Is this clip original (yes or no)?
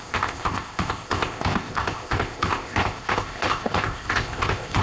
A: no